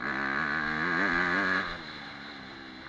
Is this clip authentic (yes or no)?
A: yes